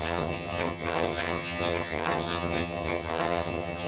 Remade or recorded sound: remade